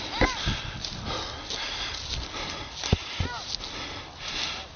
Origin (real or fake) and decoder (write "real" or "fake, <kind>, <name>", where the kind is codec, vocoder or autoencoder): real